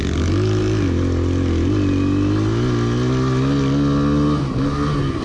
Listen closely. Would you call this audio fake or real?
real